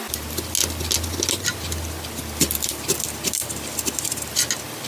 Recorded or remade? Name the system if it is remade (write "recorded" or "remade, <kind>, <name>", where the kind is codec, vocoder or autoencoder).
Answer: recorded